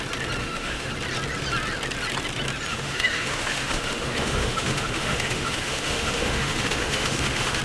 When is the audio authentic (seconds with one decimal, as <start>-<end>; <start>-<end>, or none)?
0.0-0.4; 0.9-2.7